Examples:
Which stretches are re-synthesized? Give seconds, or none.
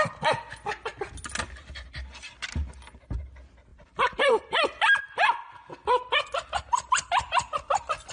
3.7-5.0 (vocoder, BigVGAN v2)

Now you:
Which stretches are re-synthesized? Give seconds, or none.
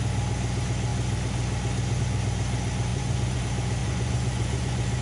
2.9-3.4 (vocoder, Vocos); 3.8-5.0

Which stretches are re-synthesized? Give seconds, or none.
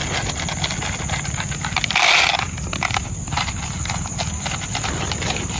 none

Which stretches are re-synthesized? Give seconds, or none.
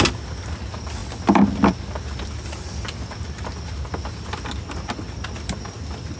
none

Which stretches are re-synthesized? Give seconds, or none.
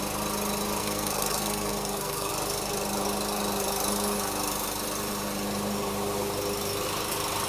0.8-2.3 (codec, SNAC)